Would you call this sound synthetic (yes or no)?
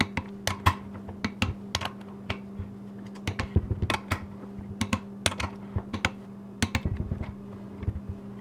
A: no